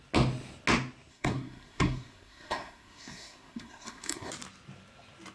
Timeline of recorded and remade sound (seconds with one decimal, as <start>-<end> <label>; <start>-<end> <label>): 0.0-1.1 recorded; 1.1-4.3 remade; 4.3-5.3 recorded